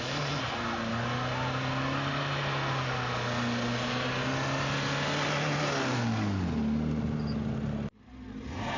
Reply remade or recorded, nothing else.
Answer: recorded